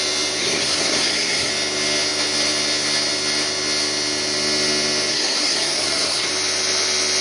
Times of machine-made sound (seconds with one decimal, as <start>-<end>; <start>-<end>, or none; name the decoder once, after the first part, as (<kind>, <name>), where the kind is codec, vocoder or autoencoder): 0.4-1.5 (codec, SNAC); 5.1-6.3